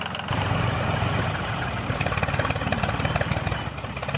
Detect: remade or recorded recorded